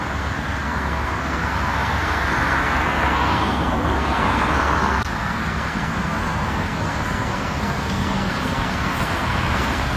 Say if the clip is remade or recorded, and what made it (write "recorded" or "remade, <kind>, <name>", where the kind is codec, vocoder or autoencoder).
remade, codec, SNAC